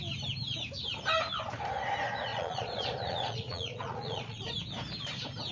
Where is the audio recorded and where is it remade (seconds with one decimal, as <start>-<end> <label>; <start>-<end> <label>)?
0.0-2.3 recorded; 2.3-4.5 remade; 4.5-5.5 recorded